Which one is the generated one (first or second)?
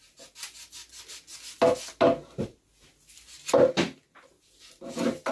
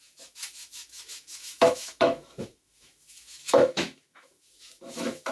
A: second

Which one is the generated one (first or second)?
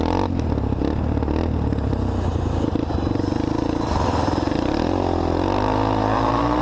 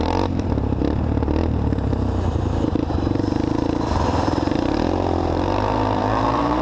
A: second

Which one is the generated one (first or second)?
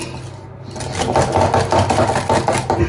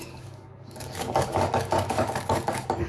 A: second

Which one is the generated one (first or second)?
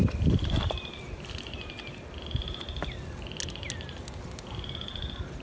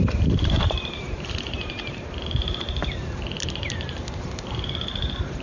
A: second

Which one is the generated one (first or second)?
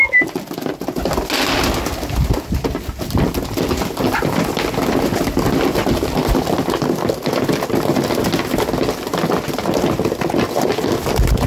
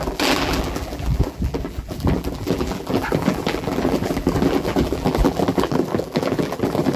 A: second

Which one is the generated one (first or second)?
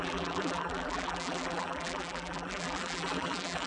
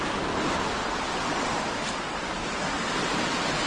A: first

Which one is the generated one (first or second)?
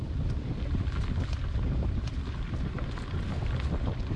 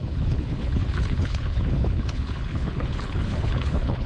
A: second